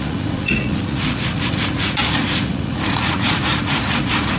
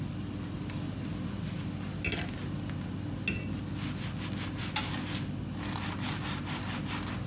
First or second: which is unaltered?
second